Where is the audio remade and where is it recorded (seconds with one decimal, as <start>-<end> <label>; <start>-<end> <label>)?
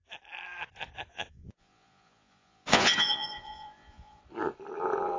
0.0-1.1 recorded; 1.1-4.2 remade; 4.2-5.2 recorded